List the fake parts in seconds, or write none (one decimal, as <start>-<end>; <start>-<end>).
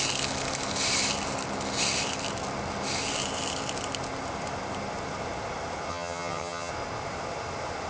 5.9-6.7